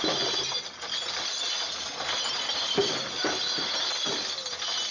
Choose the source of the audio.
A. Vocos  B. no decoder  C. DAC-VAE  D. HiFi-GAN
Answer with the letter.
B